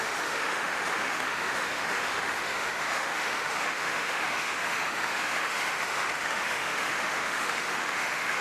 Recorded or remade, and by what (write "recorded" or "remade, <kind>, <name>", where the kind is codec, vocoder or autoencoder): remade, autoencoder, DAC-VAE